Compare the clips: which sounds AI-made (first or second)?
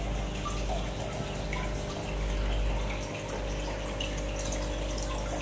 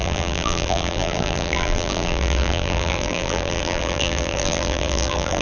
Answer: second